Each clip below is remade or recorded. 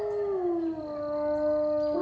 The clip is recorded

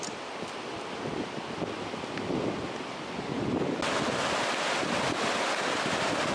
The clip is recorded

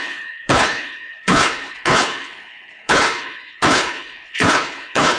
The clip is remade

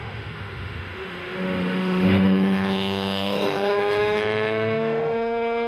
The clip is remade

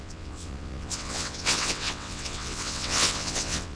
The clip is remade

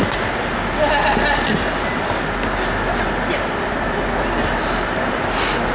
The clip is recorded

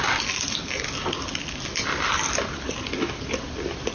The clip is recorded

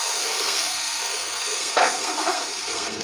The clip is remade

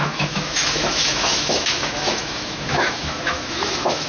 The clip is remade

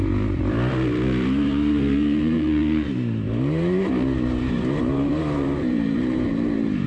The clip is remade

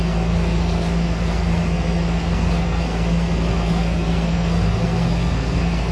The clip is remade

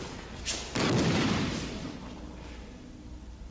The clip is recorded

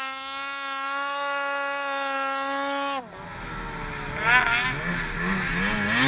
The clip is recorded